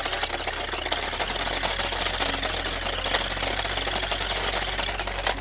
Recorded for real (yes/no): yes